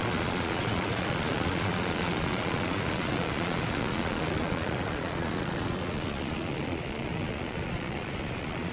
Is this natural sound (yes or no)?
no